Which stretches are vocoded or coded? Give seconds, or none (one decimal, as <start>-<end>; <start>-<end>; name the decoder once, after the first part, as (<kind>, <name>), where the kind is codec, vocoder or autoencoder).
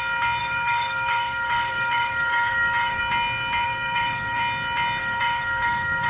0.4-3.0 (codec, DAC); 3.6-4.4; 5.0-6.1